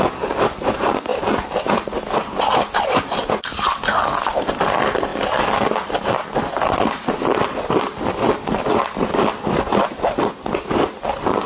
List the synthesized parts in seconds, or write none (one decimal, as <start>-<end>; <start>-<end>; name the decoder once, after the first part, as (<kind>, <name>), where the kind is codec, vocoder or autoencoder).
0.0-11.5 (vocoder, BigVGAN v2)